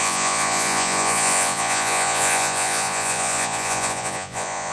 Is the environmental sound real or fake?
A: fake